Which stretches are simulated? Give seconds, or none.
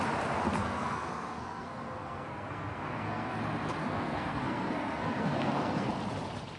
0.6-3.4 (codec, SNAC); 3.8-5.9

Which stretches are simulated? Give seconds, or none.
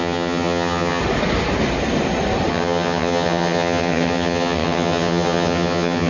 0.0-1.0 (vocoder, HiFi-GAN); 2.5-6.1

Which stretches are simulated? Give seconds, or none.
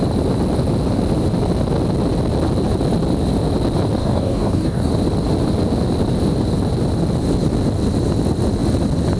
4.0-4.9 (codec, DAC)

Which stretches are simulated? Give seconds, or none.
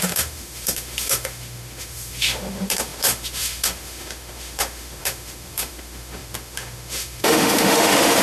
0.0-8.2 (autoencoder, DAC-VAE)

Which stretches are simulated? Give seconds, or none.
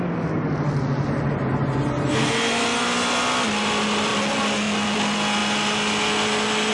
none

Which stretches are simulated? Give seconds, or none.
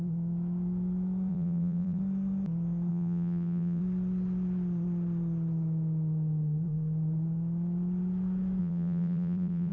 1.3-2.0 (vocoder, BigVGAN v2); 2.9-3.8; 8.6-9.7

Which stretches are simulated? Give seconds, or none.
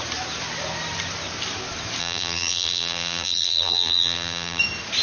2.0-4.6 (vocoder, BigVGAN v2)